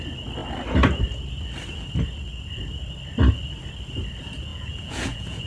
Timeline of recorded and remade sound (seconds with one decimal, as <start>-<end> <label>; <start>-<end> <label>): 0.0-4.5 recorded; 4.5-5.5 remade